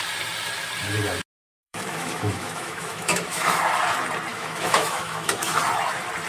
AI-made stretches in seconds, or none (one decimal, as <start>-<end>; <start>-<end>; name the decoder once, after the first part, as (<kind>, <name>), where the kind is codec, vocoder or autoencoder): 1.5-3.6 (autoencoder, DAC-VAE); 4.3-5.6

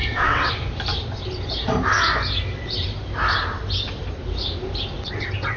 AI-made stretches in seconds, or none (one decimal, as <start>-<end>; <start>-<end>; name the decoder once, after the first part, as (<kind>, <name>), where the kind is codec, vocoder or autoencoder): 0.0-0.5 (vocoder, WaveNeXt)

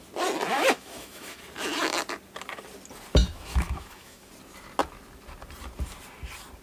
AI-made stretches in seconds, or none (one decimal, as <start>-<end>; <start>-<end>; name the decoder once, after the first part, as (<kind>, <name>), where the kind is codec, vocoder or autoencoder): 0.5-1.4 (autoencoder, DAC-VAE); 3.2-4.3

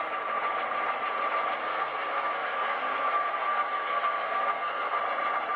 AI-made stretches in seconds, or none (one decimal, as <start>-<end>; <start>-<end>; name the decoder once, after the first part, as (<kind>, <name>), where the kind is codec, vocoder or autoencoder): 1.6-5.0 (codec, SNAC)